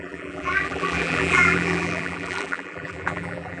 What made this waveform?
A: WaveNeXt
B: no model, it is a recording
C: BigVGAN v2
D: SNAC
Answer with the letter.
C